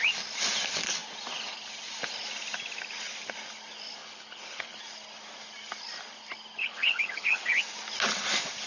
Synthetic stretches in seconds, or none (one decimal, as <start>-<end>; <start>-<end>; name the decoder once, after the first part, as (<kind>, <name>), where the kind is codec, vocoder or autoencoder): 4.0-4.8 (codec, HILCodec); 6.6-7.6